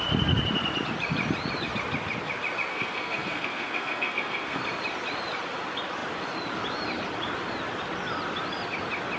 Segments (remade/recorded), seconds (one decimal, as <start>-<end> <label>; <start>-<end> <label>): 0.0-2.7 recorded; 2.7-4.6 remade; 4.6-9.2 recorded